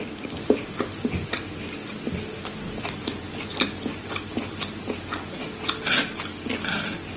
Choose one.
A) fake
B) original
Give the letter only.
B